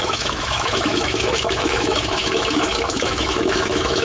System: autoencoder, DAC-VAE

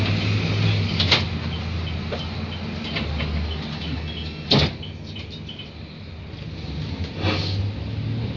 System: none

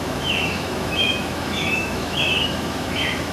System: autoencoder, DAC-VAE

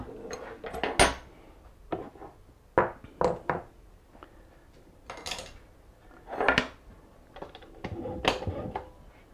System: none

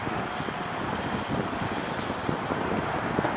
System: none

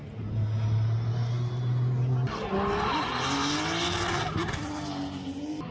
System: none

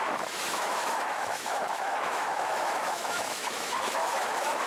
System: autoencoder, DAC-VAE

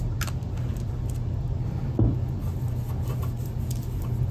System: none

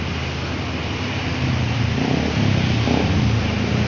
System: none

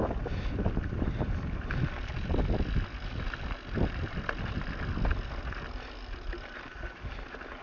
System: none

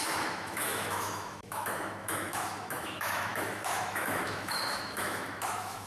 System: autoencoder, DAC-VAE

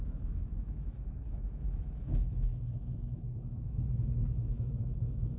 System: autoencoder, DAC-VAE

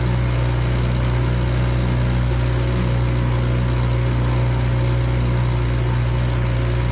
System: none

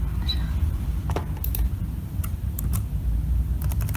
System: none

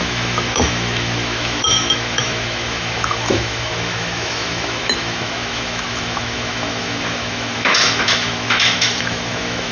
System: autoencoder, DAC-VAE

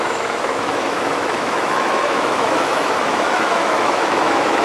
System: autoencoder, DAC-VAE